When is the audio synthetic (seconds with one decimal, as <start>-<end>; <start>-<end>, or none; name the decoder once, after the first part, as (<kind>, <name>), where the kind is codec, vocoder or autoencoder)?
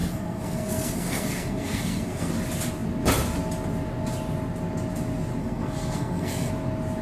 0.0-2.3 (codec, SNAC); 5.4-6.5